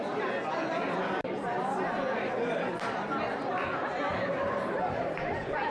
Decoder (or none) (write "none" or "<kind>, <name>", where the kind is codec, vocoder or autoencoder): none